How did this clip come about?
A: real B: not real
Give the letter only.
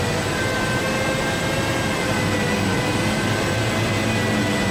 A